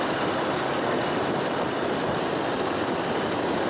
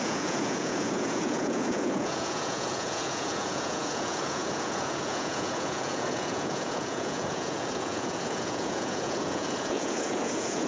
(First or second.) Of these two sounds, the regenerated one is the second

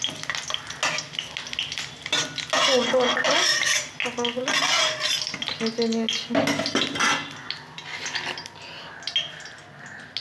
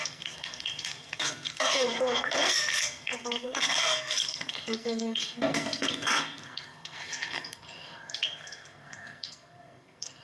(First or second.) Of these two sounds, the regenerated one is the second